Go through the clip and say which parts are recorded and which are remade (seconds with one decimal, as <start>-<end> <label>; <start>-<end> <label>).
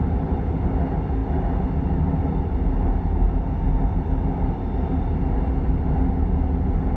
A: 0.0-7.0 recorded